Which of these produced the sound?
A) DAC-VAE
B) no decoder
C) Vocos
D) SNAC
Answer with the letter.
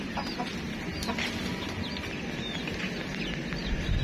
B